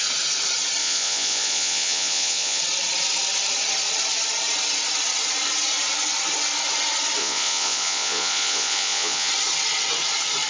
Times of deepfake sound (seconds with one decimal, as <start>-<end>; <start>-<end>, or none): 0.8-2.6; 7.2-9.3